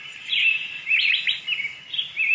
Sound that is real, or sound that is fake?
fake